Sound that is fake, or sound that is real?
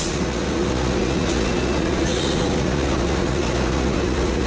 fake